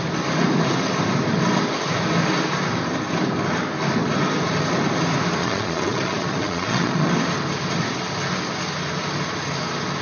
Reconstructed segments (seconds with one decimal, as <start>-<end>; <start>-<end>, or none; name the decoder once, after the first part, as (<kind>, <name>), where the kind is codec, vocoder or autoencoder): 5.4-7.1 (vocoder, Vocos)